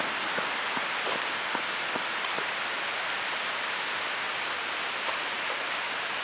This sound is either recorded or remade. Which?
recorded